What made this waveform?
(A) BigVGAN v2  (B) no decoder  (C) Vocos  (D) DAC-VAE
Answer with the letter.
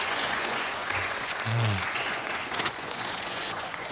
C